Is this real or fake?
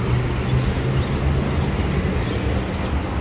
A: real